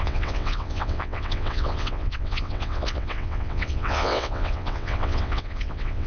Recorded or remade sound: remade